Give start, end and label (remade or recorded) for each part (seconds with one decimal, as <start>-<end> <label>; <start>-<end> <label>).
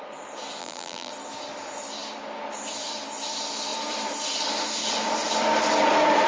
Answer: 0.0-0.6 recorded; 0.6-1.1 remade; 1.1-6.3 recorded